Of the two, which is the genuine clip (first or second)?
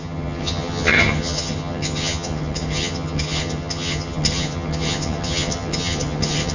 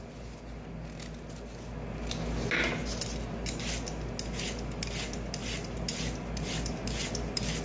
second